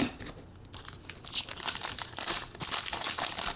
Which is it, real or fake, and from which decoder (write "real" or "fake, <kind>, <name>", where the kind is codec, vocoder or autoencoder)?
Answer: real